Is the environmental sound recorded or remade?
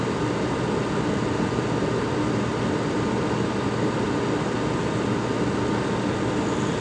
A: recorded